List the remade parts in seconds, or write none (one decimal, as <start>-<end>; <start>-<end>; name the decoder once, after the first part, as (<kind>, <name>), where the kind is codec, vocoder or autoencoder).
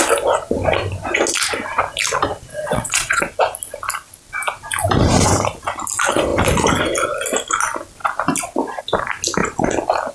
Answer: 2.5-3.2 (vocoder, WaveNeXt)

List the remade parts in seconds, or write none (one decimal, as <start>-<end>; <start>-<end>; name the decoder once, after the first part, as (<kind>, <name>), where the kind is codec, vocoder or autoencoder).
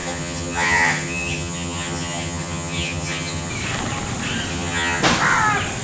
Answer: 0.0-3.5 (vocoder, HiFi-GAN); 4.5-5.0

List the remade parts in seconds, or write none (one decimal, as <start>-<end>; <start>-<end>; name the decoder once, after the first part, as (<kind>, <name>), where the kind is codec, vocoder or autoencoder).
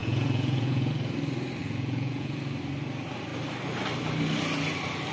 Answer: 0.0-0.9 (vocoder, Vocos); 1.6-2.4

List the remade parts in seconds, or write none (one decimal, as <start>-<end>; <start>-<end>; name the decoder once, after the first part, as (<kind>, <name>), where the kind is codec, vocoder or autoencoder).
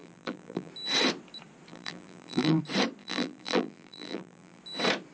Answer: 0.0-0.7 (vocoder, BigVGAN v2); 1.7-2.6; 3.0-4.6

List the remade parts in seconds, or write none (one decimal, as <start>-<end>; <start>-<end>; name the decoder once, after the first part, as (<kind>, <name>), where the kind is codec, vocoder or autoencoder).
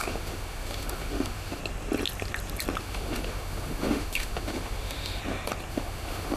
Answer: 0.0-1.6 (autoencoder, DAC-VAE); 2.8-5.2; 5.7-6.4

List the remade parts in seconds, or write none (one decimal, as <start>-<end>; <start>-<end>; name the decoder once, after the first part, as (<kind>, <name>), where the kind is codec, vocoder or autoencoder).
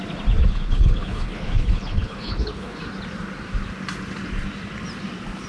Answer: 0.4-2.8 (codec, HILCodec)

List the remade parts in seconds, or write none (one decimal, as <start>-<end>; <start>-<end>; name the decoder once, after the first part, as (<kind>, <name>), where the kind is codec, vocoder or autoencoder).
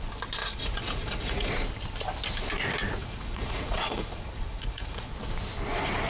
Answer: 0.4-1.5 (vocoder, Vocos); 3.0-5.1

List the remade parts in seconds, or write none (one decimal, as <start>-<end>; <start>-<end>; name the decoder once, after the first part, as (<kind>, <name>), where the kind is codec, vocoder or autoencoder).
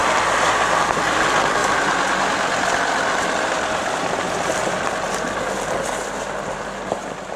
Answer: 1.6-4.9 (vocoder, BigVGAN v2)